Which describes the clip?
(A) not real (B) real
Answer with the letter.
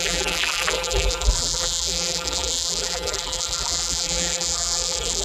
A